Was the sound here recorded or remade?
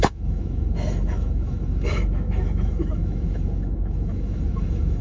remade